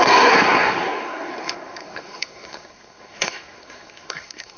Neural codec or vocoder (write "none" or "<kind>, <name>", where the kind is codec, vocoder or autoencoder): codec, SNAC